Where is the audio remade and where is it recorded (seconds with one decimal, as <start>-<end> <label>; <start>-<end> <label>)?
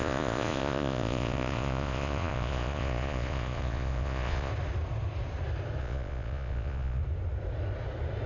0.0-4.5 remade; 4.5-5.8 recorded; 5.8-7.0 remade; 7.0-8.3 recorded